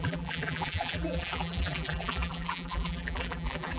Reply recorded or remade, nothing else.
remade